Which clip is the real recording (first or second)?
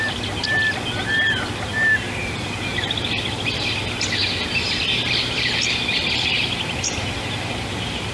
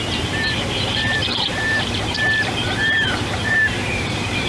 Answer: first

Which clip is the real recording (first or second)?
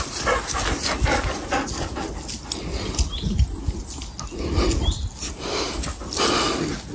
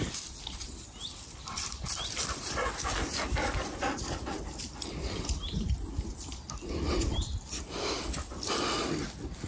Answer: first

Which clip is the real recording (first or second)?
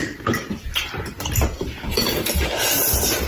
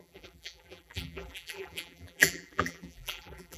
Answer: first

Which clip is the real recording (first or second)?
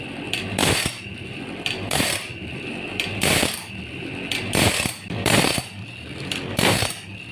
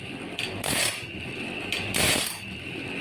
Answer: second